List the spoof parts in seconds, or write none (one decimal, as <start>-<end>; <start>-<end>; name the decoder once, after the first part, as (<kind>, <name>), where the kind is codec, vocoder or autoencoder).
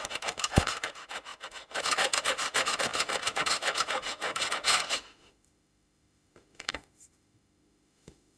0.0-8.4 (autoencoder, DAC-VAE)